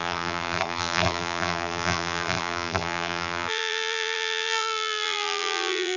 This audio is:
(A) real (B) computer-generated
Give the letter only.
B